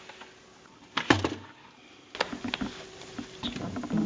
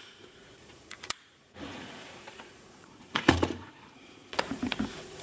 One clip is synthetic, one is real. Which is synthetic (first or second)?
second